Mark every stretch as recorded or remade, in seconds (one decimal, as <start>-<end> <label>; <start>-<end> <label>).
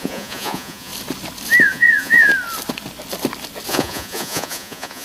0.0-0.9 remade; 0.9-1.6 recorded; 1.6-2.3 remade; 2.3-3.7 recorded; 3.7-5.0 remade